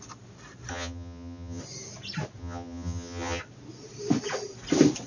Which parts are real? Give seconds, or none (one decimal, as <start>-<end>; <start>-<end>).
0.0-0.7; 1.6-2.4; 3.4-5.1